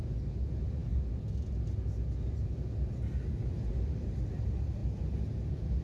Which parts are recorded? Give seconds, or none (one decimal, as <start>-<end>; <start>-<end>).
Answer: 0.0-5.8